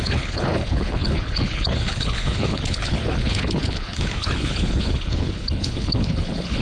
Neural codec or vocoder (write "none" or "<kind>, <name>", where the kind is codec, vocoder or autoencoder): codec, HILCodec